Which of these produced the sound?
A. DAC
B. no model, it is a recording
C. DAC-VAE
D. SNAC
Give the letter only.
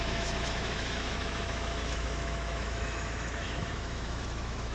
C